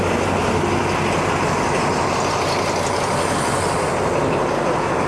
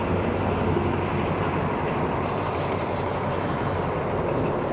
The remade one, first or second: second